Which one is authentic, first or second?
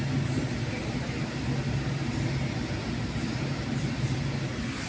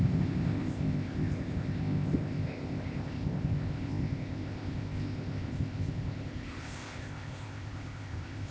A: first